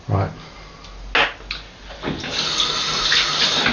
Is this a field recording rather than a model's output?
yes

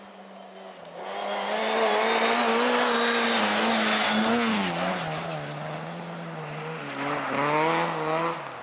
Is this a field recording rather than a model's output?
yes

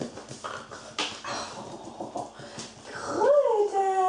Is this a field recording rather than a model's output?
yes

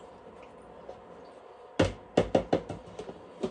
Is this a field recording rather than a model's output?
yes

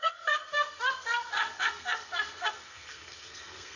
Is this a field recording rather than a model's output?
no